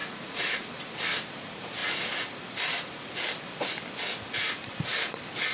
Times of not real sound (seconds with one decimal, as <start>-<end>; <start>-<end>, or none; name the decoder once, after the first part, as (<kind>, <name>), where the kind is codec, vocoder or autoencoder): 0.0-0.7 (vocoder, Vocos)